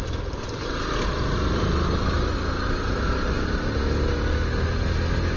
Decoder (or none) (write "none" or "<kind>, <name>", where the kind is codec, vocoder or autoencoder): none